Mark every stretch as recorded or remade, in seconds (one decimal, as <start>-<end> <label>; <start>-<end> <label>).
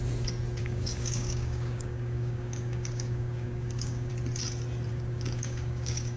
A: 0.0-0.6 recorded; 0.6-4.1 remade; 4.1-4.9 recorded; 4.9-6.2 remade